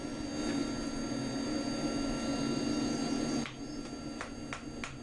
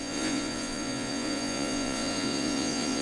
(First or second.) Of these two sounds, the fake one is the second